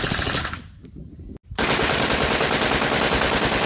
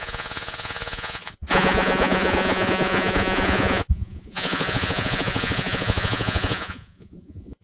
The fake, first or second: second